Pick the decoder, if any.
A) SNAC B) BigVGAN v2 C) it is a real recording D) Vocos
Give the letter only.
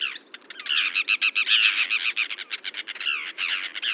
C